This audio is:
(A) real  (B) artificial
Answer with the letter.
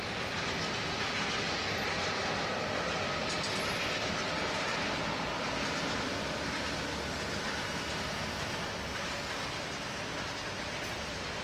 A